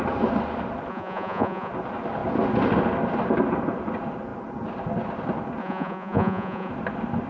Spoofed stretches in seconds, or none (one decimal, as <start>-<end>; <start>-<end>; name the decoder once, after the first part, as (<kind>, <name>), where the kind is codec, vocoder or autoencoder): 0.9-1.7 (vocoder, Vocos); 5.6-6.7